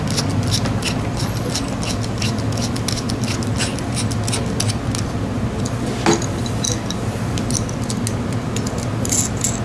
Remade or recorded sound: recorded